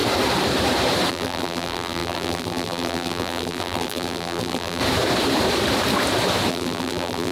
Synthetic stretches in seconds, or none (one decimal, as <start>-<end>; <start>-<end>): 1.1-4.8; 6.5-7.3